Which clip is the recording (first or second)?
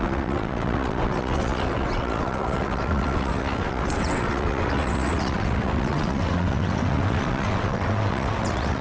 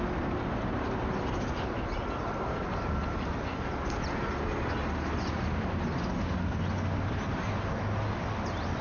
second